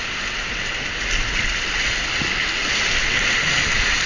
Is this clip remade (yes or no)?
no